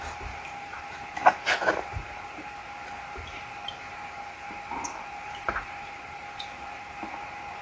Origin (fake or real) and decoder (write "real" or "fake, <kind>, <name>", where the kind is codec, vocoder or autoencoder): fake, vocoder, BigVGAN v2